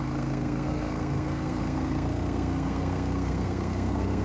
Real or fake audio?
fake